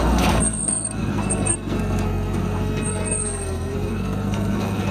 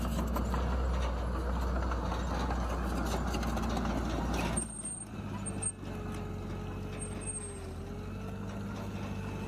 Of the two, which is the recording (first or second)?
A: second